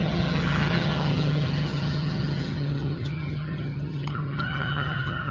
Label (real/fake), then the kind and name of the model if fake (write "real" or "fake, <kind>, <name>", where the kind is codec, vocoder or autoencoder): fake, vocoder, HiFi-GAN